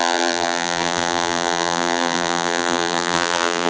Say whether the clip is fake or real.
fake